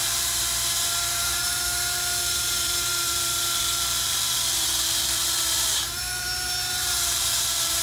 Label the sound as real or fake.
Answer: fake